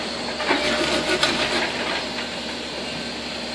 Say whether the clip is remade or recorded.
recorded